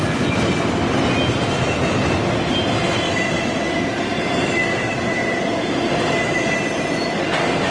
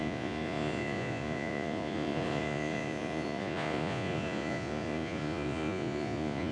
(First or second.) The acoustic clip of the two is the first